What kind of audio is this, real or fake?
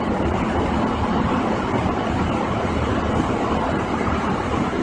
real